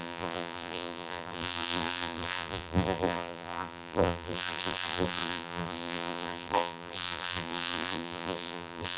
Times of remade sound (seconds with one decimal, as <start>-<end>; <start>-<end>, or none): 0.0-9.0

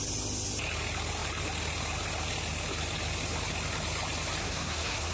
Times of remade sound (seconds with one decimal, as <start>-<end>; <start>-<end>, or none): 4.4-5.1

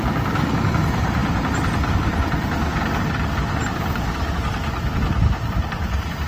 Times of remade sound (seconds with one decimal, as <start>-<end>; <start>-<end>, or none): none

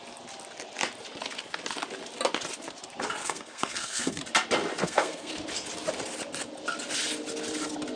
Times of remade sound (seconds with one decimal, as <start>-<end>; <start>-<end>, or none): 3.2-4.2; 4.8-5.3

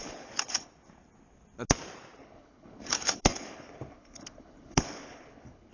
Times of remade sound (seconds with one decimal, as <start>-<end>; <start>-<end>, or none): 0.0-0.7; 2.2-5.7

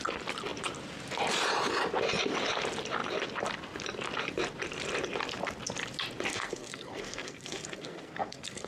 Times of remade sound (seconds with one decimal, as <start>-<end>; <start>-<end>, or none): 6.3-8.7